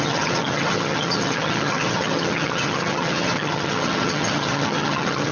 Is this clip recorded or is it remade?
remade